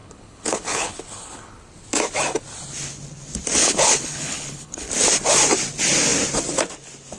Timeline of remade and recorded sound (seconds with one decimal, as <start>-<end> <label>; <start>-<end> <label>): 0.0-1.6 remade; 1.6-3.6 recorded; 3.6-4.9 remade; 4.9-7.2 recorded